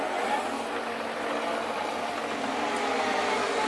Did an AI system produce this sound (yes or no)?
no